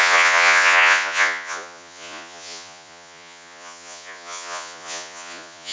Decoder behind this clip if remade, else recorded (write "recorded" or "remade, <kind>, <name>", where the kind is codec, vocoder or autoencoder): remade, vocoder, Vocos